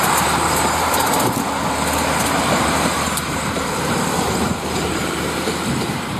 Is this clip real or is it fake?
fake